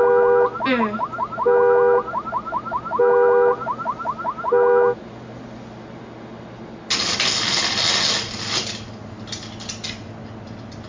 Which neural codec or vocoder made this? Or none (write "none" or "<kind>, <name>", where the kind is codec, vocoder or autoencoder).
none